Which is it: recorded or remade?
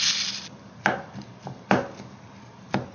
recorded